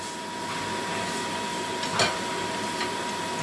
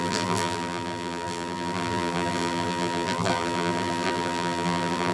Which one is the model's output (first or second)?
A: second